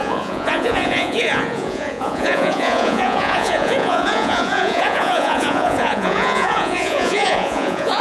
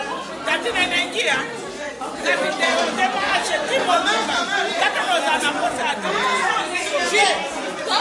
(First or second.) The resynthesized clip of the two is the first